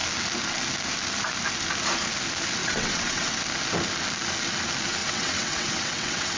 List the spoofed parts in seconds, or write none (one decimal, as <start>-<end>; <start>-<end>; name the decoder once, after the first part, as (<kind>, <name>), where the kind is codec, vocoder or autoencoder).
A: 2.6-3.4 (vocoder, WaveNeXt); 5.0-6.4